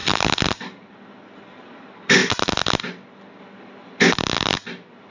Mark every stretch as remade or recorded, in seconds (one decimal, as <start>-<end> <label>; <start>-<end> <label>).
0.0-5.1 recorded